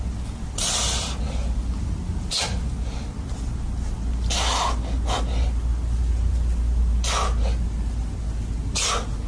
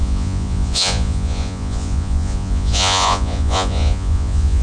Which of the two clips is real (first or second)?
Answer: first